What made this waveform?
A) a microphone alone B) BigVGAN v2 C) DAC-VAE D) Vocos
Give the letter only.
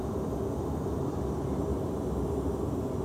A